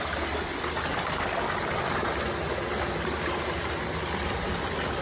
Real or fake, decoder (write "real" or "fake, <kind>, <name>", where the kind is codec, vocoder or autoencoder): real